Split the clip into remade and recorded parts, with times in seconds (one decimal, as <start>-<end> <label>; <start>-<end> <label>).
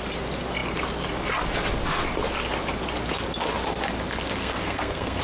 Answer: 0.0-4.4 recorded; 4.4-5.2 remade